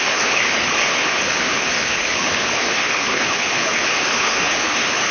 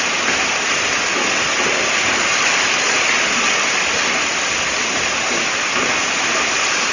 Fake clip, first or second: first